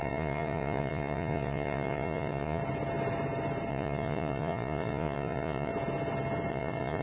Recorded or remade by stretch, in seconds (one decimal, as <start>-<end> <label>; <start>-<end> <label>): 0.0-2.6 remade; 2.6-3.7 recorded; 3.7-5.7 remade; 5.7-6.5 recorded; 6.5-7.0 remade